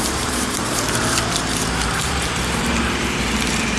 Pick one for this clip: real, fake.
fake